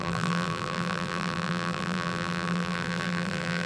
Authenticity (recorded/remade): remade